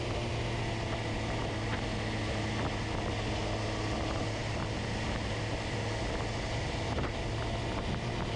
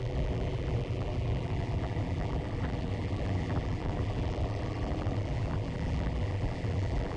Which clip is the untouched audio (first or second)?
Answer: first